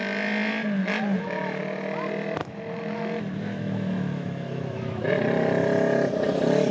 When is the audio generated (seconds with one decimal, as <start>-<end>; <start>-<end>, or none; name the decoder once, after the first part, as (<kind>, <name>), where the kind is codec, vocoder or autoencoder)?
0.8-1.6 (autoencoder, DAC-VAE); 2.4-5.1

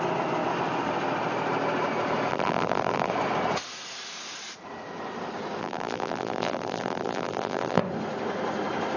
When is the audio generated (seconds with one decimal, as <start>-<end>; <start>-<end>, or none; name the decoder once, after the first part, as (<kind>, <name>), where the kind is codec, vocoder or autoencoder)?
2.3-3.1 (vocoder, BigVGAN v2); 5.6-7.8

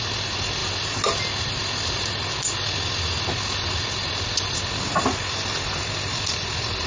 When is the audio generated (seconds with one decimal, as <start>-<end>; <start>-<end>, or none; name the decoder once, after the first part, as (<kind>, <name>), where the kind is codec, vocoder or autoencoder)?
none

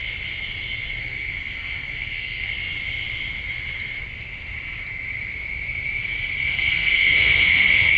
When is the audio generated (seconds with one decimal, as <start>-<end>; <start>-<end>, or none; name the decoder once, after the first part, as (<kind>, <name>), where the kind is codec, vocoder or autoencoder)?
1.0-2.5 (codec, SNAC); 6.4-8.0